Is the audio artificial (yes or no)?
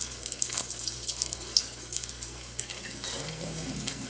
yes